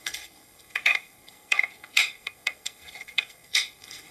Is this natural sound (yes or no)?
no